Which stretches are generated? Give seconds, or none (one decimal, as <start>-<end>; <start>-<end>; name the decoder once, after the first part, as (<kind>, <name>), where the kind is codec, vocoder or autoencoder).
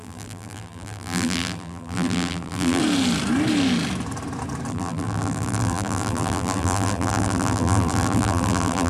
0.0-2.8 (vocoder, BigVGAN v2); 4.7-8.9